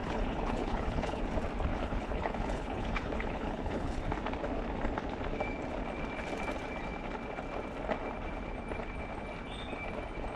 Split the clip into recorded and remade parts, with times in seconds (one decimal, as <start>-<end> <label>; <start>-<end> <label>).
0.0-1.2 remade; 1.2-1.7 recorded; 1.7-4.0 remade; 4.0-10.4 recorded